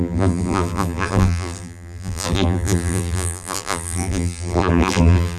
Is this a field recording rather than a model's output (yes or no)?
no